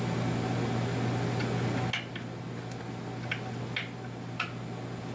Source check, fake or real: real